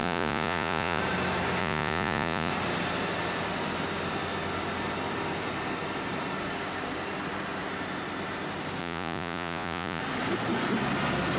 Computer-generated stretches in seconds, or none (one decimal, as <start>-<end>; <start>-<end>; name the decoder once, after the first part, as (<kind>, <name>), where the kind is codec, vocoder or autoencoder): 0.0-1.0 (vocoder, Vocos); 1.6-2.5; 8.8-10.0

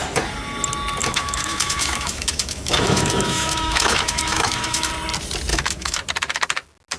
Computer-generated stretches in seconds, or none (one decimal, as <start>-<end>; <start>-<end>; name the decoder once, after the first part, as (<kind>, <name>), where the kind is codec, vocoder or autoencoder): 1.0-4.9 (autoencoder, DAC-VAE); 5.5-6.0

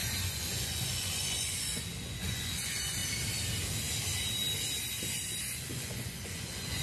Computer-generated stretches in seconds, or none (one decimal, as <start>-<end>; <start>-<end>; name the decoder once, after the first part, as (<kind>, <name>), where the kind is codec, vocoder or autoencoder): 0.0-3.0 (vocoder, Vocos); 5.4-6.8